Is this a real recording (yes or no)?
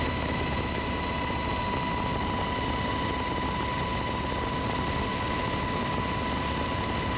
yes